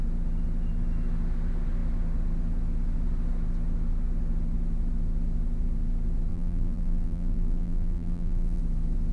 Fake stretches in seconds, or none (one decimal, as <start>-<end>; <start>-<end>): 6.3-8.6